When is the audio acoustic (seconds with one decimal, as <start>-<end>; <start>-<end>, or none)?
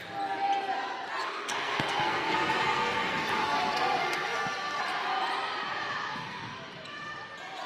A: 0.0-1.2; 4.8-6.1; 6.6-7.7